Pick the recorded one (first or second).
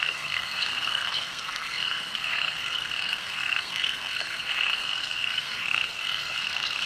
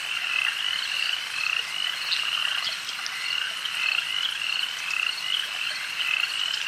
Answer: second